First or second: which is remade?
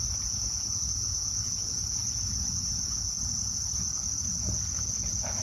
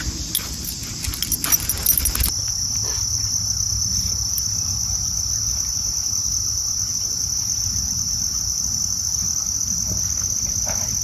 first